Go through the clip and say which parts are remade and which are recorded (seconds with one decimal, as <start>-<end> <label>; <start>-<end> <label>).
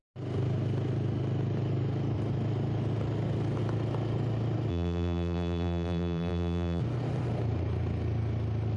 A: 0.0-4.7 recorded; 4.7-6.8 remade; 6.8-8.8 recorded